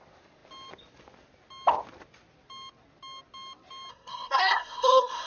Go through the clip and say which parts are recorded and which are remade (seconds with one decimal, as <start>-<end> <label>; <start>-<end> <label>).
0.0-3.9 recorded; 3.9-5.3 remade